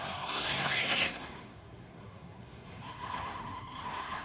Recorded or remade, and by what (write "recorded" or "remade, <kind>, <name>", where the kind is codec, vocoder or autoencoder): remade, codec, SNAC